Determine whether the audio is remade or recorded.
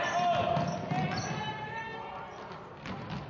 recorded